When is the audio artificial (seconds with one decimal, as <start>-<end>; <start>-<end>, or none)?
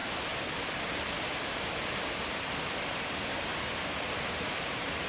none